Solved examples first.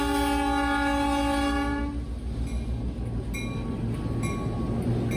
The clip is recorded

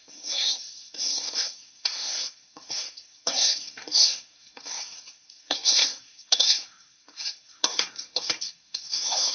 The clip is remade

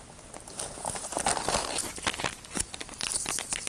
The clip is recorded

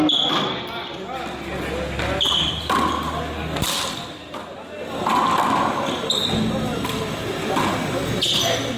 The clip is recorded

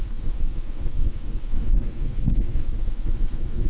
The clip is remade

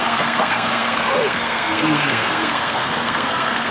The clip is remade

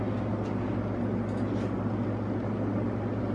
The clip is recorded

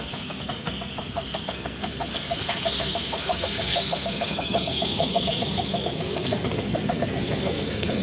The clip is remade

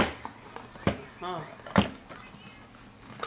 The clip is recorded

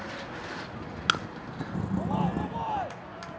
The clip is recorded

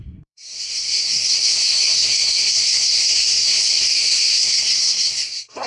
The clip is remade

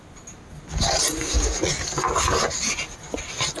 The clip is recorded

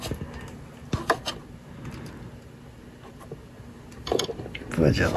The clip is recorded